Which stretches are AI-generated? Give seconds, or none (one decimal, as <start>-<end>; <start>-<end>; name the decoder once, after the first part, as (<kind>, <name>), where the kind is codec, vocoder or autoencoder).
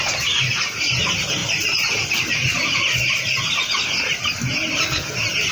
none